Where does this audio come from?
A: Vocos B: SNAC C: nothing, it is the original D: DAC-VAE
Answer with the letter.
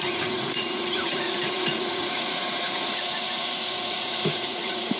A